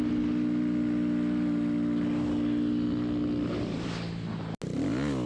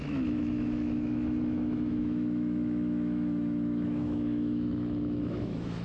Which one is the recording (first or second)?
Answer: first